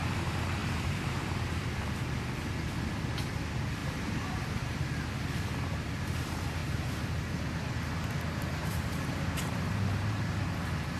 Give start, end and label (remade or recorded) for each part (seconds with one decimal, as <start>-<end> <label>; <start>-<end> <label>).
0.0-0.6 recorded; 0.6-1.3 remade; 1.3-6.6 recorded; 6.6-7.4 remade; 7.4-8.6 recorded; 8.6-10.3 remade; 10.3-11.0 recorded